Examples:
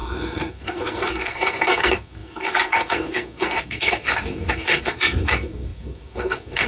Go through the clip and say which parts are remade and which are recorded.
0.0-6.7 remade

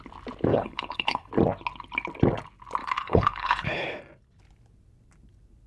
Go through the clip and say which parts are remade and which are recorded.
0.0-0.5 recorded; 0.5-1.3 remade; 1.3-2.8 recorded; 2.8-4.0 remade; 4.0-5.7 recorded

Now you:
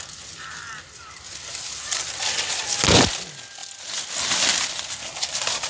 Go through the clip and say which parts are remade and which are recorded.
0.0-5.7 recorded